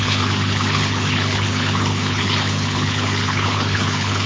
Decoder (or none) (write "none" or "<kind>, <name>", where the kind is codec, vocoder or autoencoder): codec, HILCodec